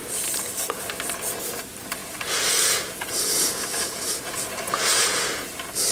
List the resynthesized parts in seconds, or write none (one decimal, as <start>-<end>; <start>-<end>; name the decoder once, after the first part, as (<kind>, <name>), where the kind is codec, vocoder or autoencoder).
2.0-5.5 (vocoder, Vocos)